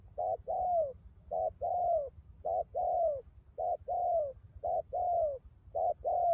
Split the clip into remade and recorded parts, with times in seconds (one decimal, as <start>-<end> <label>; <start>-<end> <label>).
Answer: 0.0-6.3 recorded